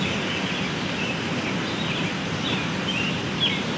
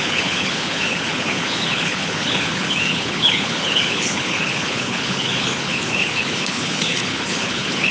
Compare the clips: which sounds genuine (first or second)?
first